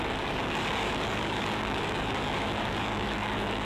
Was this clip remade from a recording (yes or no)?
yes